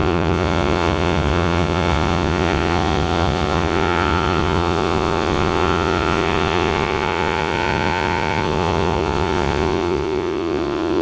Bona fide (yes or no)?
no